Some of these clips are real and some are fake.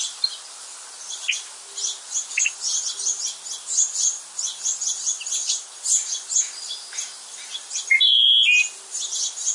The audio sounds real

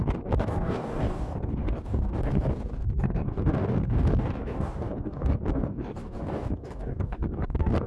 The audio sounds fake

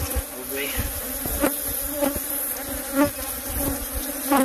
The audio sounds real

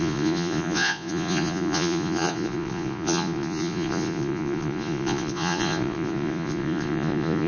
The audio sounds fake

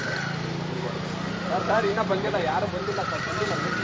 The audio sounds fake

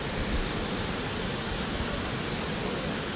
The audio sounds real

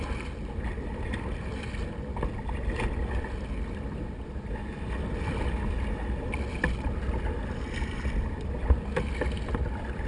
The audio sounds real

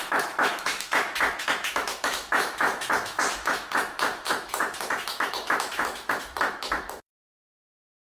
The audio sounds fake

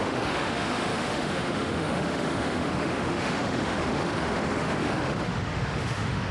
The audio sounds fake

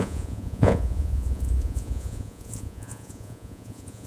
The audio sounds fake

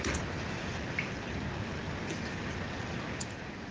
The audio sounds real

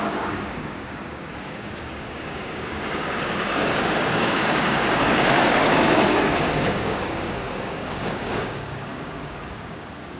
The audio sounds fake